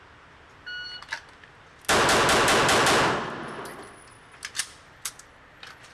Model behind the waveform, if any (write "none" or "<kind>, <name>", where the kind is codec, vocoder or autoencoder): none